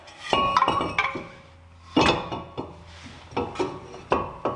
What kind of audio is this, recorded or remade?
recorded